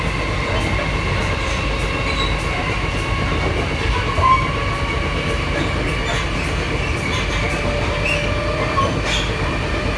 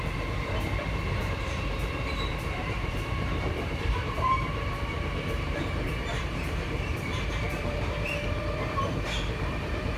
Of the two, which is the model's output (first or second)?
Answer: second